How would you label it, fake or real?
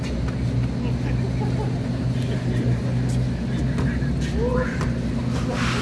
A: real